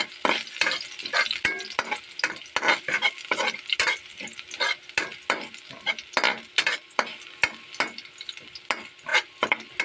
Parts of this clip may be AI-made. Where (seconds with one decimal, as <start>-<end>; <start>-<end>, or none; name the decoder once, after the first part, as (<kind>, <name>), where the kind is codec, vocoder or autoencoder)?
none